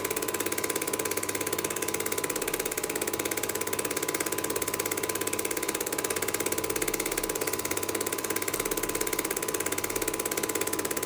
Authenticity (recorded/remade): recorded